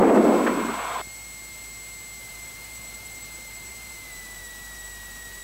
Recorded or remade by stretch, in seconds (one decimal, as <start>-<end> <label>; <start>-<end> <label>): 0.0-2.2 recorded; 2.2-5.4 remade